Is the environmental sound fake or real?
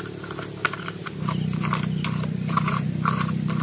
fake